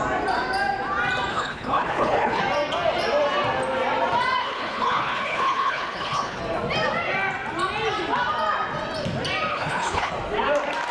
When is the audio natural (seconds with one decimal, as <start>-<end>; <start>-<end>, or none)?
0.0-1.3; 2.4-4.4; 6.4-9.5; 10.1-10.9